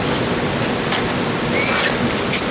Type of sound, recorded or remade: recorded